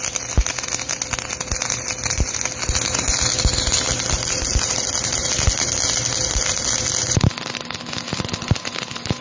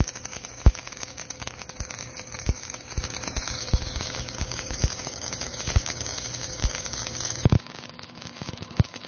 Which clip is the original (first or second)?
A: first